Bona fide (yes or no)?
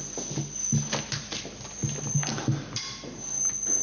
yes